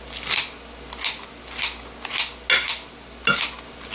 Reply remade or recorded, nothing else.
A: recorded